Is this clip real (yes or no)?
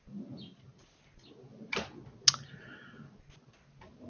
yes